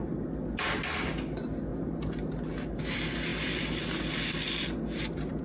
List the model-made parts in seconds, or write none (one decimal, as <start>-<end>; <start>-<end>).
1.7-2.8